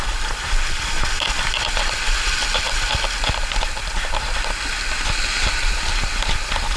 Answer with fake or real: real